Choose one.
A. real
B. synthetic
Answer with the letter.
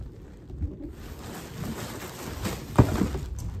A